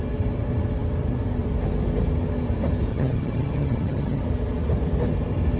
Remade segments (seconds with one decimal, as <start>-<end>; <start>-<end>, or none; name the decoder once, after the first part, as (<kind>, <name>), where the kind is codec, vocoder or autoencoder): 2.9-4.2 (vocoder, HiFi-GAN)